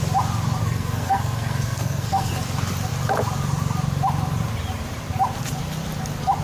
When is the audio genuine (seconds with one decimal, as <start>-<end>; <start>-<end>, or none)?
0.0-0.6; 2.3-6.4